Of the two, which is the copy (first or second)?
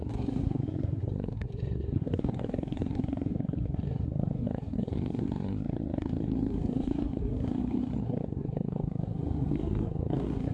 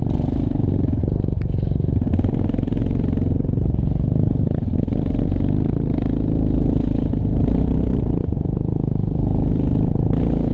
first